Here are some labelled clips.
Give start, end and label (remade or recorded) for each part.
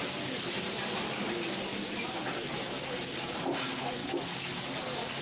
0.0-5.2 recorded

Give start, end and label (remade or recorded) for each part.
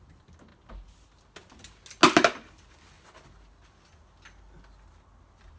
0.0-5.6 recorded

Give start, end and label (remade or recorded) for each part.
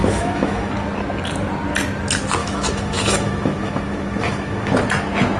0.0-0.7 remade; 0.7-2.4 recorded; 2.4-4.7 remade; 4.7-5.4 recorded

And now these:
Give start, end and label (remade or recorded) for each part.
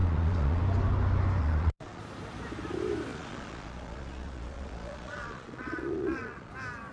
0.0-0.6 remade; 0.6-1.4 recorded; 1.4-2.0 remade; 2.0-3.1 recorded; 3.1-6.5 remade; 6.5-6.9 recorded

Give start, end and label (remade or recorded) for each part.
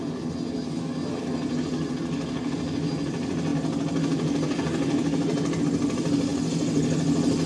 0.0-7.5 recorded